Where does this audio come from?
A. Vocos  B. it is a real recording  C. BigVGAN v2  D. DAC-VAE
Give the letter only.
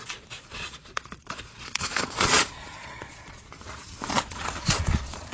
A